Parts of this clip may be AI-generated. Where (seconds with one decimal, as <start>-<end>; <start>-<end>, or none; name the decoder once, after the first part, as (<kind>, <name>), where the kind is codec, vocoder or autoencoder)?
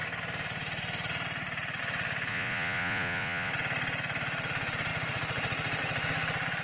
2.3-3.5 (vocoder, Vocos)